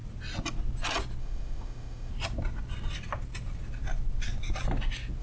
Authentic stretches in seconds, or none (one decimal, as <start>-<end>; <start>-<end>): 0.0-1.2; 2.1-5.2